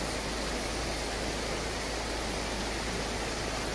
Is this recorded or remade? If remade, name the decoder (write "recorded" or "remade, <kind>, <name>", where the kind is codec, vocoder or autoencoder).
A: recorded